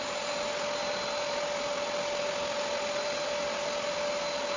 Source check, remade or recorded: recorded